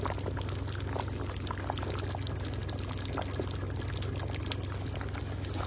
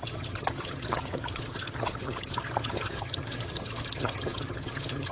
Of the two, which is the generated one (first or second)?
second